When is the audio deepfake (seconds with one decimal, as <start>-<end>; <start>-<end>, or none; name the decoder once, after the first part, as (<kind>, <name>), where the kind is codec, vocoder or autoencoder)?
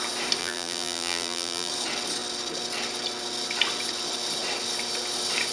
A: 0.4-1.7 (vocoder, BigVGAN v2)